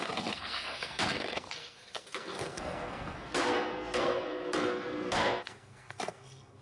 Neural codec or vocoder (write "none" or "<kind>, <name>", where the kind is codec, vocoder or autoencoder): codec, SNAC